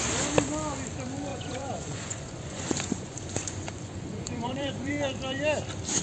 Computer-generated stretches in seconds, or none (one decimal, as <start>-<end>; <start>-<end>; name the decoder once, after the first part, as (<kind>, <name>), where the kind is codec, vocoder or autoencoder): 1.3-4.9 (vocoder, Vocos)